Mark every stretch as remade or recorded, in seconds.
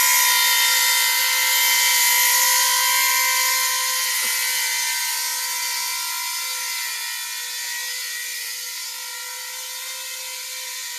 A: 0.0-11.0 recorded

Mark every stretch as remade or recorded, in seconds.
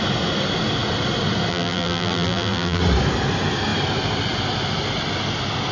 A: 0.0-1.5 recorded; 1.5-2.8 remade; 2.8-5.7 recorded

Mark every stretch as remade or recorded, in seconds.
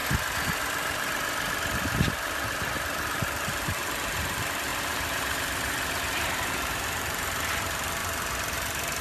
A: 0.0-2.0 recorded; 2.0-9.0 remade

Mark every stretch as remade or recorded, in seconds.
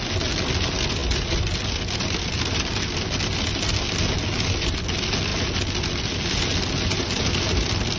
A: 0.0-8.0 recorded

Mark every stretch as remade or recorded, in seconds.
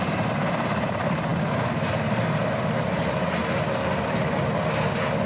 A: 0.0-3.4 remade; 3.4-5.3 recorded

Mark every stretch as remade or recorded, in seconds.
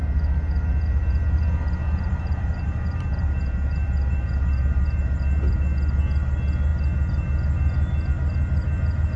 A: 0.0-1.8 recorded; 1.8-5.2 remade; 5.2-9.2 recorded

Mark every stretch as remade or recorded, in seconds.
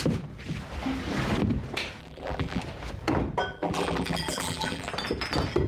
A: 0.0-2.0 recorded; 2.0-2.6 remade; 2.6-3.5 recorded; 3.5-4.9 remade; 4.9-5.7 recorded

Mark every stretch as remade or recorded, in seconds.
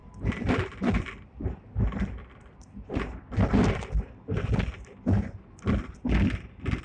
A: 0.0-4.1 remade; 4.1-6.8 recorded